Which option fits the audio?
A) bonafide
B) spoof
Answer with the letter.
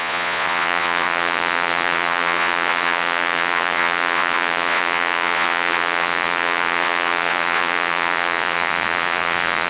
B